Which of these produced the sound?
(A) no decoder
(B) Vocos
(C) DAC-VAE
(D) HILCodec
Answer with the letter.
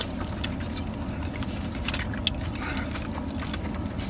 A